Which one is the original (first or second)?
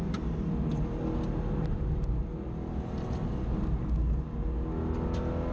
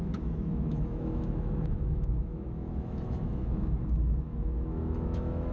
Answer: first